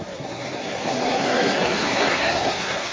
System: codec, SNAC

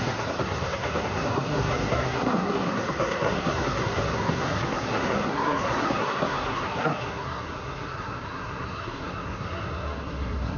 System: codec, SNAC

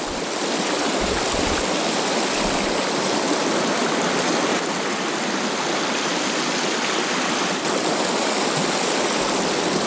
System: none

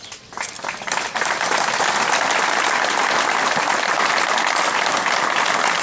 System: none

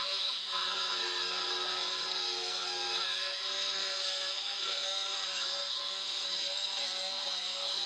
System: codec, SNAC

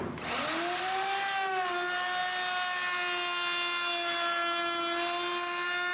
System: none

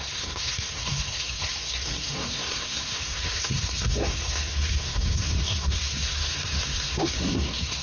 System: codec, SNAC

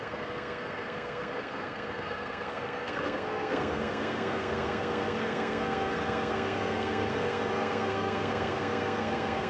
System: codec, SNAC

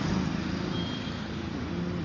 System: none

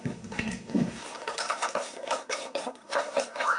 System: codec, SNAC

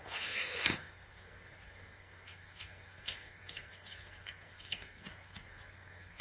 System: codec, SNAC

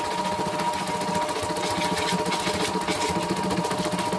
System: none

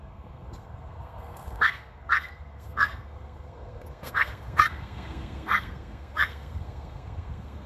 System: codec, SNAC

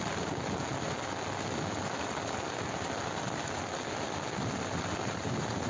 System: none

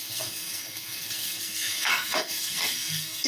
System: codec, SNAC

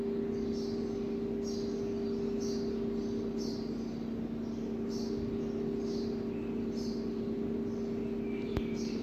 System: none